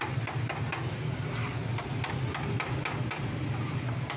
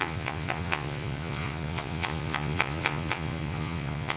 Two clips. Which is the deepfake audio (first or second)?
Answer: second